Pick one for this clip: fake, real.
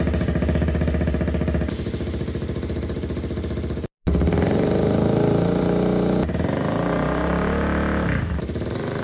fake